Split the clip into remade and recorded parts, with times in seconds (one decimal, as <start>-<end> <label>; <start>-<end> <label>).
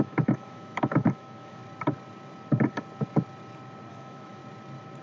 0.0-1.6 remade; 1.6-3.9 recorded; 3.9-4.4 remade; 4.4-5.0 recorded